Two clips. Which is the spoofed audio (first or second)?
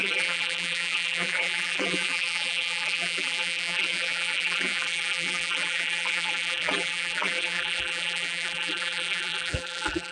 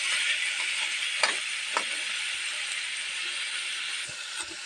first